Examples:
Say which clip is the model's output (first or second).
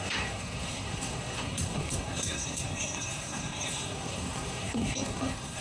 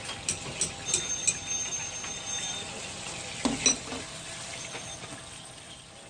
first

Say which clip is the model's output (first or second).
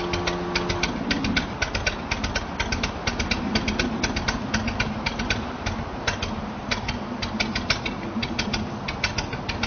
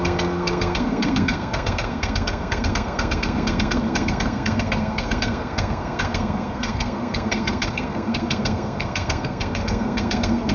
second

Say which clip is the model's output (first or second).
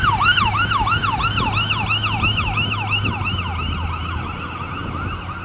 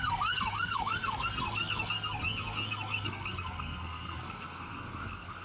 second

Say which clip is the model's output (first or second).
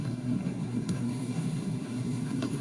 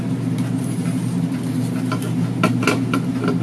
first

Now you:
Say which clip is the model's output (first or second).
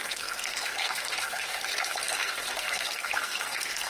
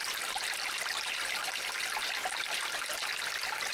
first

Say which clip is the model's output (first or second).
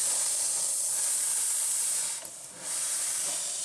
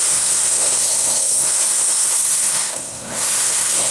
second